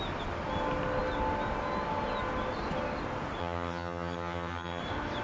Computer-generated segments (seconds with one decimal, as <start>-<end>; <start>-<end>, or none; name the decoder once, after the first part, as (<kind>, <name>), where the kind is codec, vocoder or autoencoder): 3.4-4.8 (vocoder, HiFi-GAN)